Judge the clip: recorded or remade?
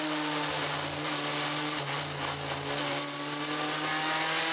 recorded